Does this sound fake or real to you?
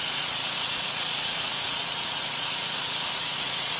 fake